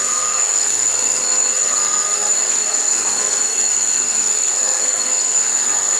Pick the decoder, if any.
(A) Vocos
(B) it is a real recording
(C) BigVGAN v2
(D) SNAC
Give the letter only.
D